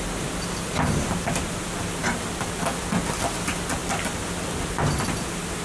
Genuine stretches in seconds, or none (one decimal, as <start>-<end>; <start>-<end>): 0.0-5.6